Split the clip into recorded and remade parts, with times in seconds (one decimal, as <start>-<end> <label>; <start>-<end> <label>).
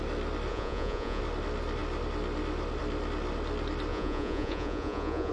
0.0-0.5 recorded; 0.5-1.2 remade; 1.2-3.9 recorded; 3.9-5.3 remade